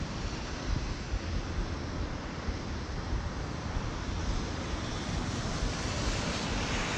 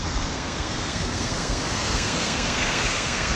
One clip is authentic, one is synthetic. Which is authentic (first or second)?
first